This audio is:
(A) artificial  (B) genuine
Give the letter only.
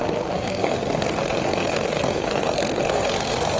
A